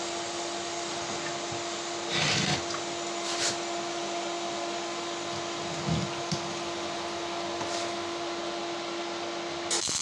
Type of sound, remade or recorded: recorded